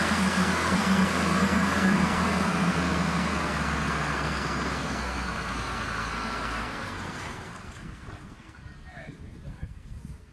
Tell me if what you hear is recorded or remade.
remade